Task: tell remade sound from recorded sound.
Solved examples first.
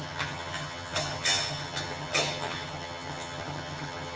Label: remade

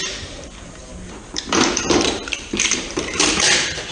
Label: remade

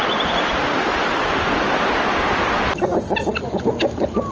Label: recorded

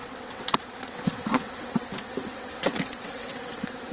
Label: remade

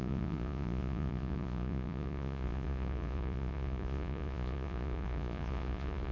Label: remade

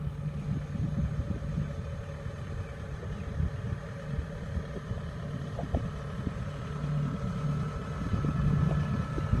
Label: recorded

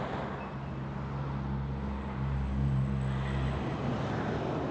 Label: recorded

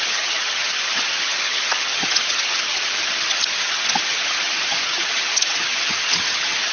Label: remade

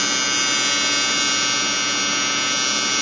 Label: recorded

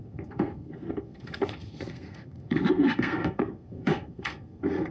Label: remade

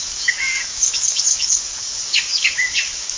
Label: remade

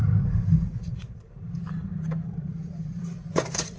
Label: remade